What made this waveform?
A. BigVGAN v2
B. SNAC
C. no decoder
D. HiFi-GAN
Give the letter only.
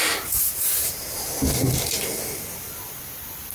C